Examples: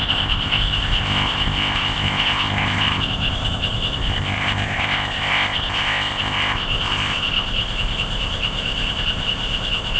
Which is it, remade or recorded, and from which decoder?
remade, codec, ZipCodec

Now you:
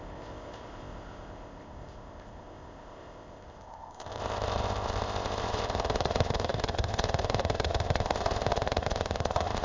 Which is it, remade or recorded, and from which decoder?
remade, codec, ZipCodec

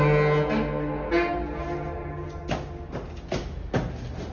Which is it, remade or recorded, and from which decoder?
recorded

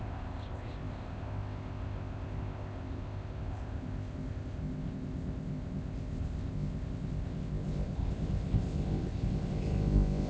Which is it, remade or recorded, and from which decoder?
remade, codec, ZipCodec